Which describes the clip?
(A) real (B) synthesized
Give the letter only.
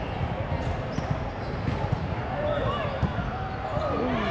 A